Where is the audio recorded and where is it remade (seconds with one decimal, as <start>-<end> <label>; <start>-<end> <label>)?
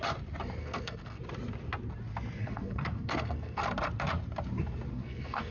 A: 0.0-0.6 recorded; 0.6-1.2 remade; 1.2-2.4 recorded; 2.4-3.6 remade; 3.6-4.9 recorded; 4.9-5.5 remade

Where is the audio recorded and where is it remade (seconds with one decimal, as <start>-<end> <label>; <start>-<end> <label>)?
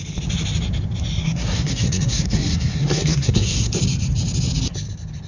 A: 0.0-1.2 recorded; 1.2-3.7 remade; 3.7-5.3 recorded